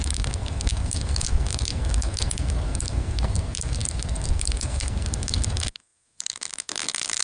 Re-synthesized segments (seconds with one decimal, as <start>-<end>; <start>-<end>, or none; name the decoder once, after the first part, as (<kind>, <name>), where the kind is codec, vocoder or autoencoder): 0.0-7.2 (codec, SNAC)